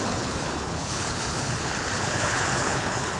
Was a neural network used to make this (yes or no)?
yes